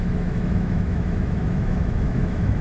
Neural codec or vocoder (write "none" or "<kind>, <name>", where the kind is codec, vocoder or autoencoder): autoencoder, DAC-VAE